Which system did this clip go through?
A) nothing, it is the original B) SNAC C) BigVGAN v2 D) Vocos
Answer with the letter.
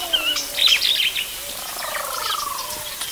C